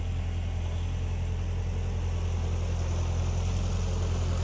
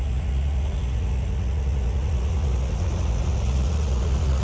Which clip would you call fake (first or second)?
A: second